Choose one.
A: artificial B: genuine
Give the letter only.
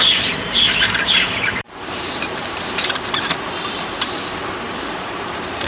A